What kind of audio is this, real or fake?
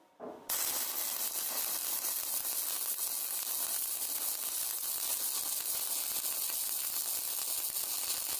real